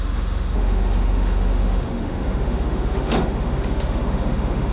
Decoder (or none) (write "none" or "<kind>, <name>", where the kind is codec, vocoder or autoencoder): autoencoder, DAC-VAE